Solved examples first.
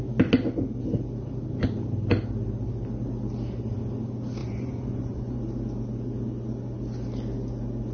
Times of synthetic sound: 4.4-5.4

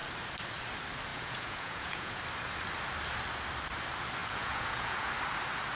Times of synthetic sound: 1.1-2.2; 4.2-5.1

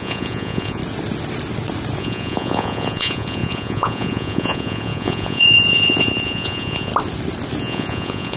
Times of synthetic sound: 0.0-0.8; 2.0-6.9; 7.6-8.4

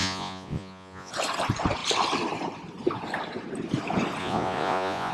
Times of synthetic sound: 0.0-1.1; 4.2-5.1